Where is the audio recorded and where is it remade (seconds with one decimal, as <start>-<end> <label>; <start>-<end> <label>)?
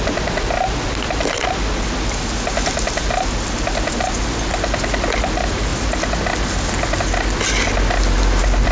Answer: 0.0-8.7 recorded